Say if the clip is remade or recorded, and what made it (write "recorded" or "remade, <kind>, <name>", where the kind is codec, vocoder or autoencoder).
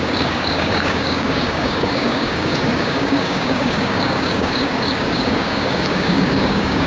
remade, codec, DAC